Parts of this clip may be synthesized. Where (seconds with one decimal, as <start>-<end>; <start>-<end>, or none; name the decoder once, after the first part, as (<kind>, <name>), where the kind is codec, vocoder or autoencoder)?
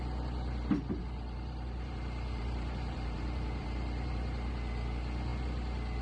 1.0-4.5 (vocoder, BigVGAN v2)